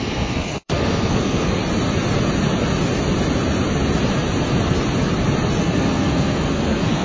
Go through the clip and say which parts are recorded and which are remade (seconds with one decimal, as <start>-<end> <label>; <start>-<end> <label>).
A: 0.0-1.6 remade; 1.6-5.6 recorded; 5.6-7.0 remade